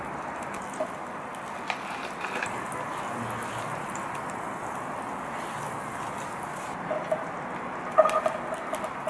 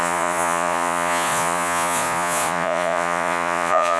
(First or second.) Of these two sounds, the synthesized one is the second